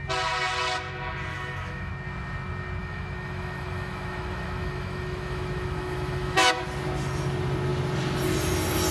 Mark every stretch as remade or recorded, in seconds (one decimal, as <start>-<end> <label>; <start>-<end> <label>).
0.0-1.3 recorded; 1.3-1.9 remade; 1.9-2.8 recorded; 2.8-6.6 remade; 6.6-8.9 recorded